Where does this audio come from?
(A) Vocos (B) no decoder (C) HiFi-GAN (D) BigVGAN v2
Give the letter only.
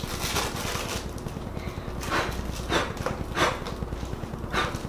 B